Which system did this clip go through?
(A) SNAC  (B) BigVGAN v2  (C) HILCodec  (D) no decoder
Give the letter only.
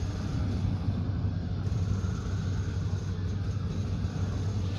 D